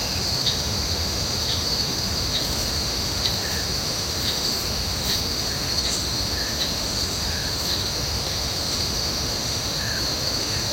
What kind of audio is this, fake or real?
fake